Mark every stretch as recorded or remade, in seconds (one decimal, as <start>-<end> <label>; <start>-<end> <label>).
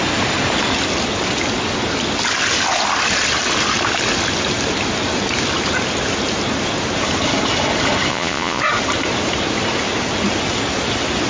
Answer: 0.0-8.1 recorded; 8.1-8.6 remade; 8.6-11.3 recorded